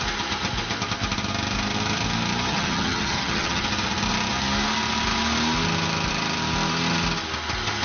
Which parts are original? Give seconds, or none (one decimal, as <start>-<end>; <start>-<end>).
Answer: 0.0-2.5; 3.6-7.8